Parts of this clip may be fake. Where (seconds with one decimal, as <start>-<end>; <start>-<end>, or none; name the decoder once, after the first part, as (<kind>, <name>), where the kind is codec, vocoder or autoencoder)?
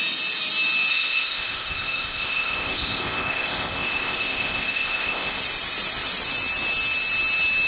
0.9-5.4 (codec, ZipCodec)